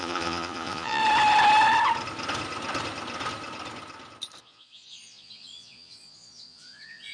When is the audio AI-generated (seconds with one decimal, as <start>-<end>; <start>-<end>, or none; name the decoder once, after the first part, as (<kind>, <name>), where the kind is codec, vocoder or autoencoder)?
0.0-1.0 (vocoder, Vocos); 4.4-7.1